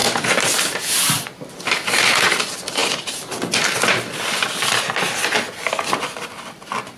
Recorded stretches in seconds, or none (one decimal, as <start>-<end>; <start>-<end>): 0.0-2.8; 4.8-7.0